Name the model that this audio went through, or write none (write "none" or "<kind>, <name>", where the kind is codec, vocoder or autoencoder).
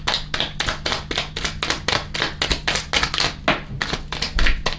none